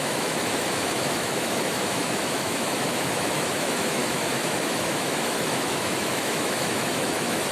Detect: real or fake fake